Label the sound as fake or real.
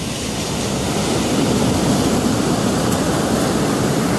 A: real